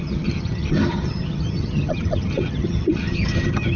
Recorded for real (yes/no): no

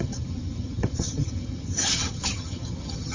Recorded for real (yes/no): no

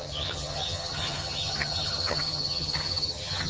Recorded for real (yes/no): no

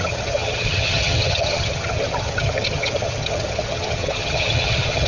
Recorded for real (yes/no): no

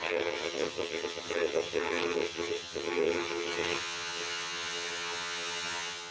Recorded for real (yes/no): no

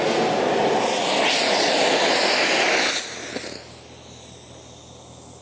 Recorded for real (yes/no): yes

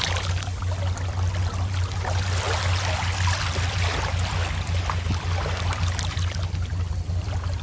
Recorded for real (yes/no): yes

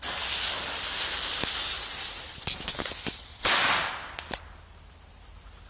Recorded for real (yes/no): yes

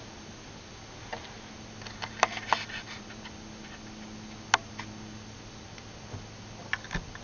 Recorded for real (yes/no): yes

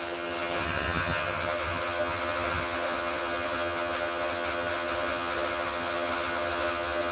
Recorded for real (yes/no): no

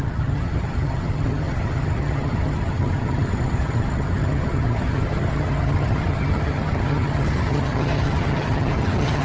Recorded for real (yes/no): no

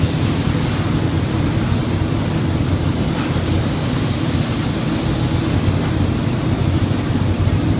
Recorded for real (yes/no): yes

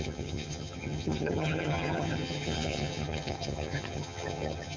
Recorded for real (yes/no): no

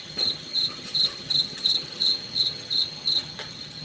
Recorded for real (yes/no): no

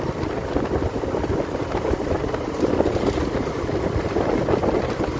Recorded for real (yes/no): yes